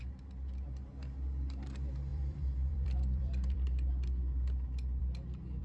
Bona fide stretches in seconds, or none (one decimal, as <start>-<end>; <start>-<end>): 0.0-2.1; 3.9-5.6